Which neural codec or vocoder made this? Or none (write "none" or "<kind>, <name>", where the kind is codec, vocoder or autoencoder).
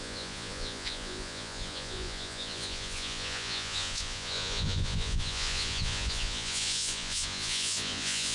vocoder, Vocos